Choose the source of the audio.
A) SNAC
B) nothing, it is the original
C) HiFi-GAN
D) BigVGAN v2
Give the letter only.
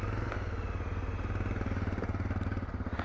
B